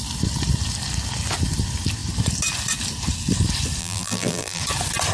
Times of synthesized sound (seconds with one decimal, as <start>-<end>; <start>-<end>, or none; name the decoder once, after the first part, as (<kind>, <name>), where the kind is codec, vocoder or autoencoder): 3.8-4.6 (vocoder, BigVGAN v2)